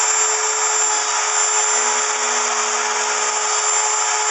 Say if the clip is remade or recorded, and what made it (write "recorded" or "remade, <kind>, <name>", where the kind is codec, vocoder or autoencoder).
recorded